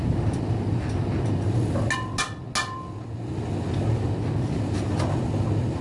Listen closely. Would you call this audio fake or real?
real